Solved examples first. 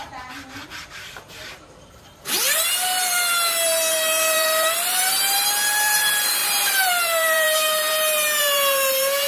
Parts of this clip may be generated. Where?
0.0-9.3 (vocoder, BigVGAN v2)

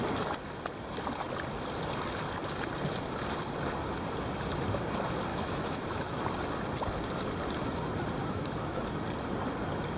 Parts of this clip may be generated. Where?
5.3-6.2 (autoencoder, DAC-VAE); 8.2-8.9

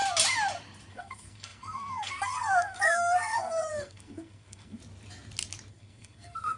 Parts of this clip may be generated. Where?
0.9-4.8 (codec, SNAC); 5.7-6.6

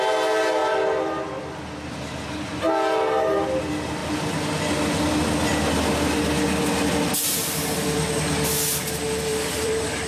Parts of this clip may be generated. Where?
9.3-10.1 (vocoder, BigVGAN v2)